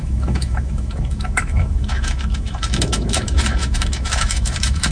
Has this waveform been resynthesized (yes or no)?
yes